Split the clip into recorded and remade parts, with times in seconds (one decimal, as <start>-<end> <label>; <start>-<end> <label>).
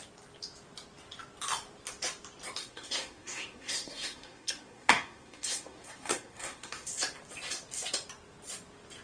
0.0-2.6 recorded; 2.6-6.9 remade; 6.9-9.0 recorded